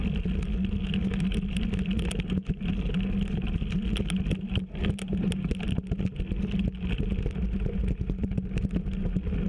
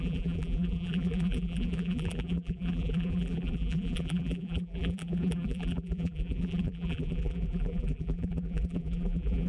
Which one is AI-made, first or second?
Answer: second